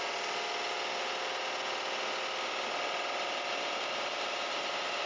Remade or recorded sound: recorded